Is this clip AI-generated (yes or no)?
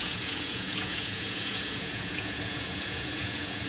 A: yes